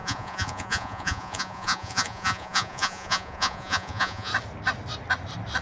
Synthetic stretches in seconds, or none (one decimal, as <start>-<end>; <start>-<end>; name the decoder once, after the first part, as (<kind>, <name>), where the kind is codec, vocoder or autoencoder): 0.0-4.3 (vocoder, Vocos)